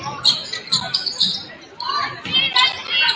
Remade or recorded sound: recorded